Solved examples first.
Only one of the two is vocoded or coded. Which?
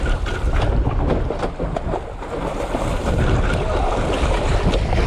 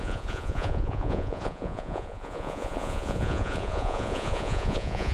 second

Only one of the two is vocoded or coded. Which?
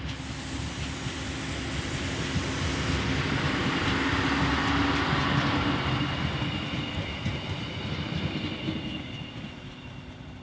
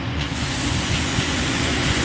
second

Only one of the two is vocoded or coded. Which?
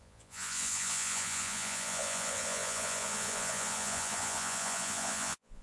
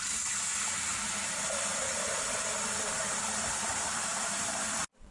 first